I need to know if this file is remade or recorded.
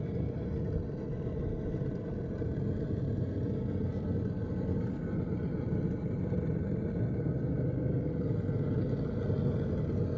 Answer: recorded